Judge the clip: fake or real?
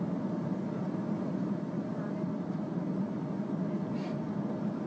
real